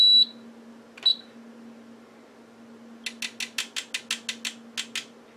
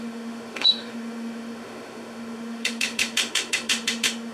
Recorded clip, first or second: first